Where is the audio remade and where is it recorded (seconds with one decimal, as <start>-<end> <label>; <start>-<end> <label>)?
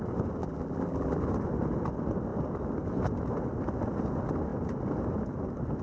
0.0-0.4 recorded; 0.4-1.2 remade; 1.2-5.8 recorded